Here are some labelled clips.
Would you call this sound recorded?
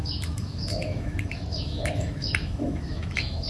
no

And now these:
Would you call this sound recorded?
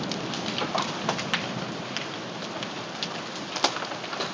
yes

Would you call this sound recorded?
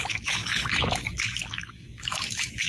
no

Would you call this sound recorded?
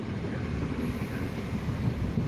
yes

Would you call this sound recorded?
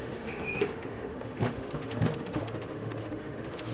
no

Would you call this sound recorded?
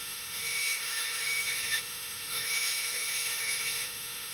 no